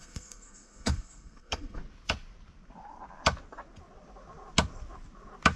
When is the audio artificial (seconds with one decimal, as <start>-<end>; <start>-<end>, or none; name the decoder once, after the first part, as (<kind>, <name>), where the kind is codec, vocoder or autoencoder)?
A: 0.0-1.8 (codec, SNAC)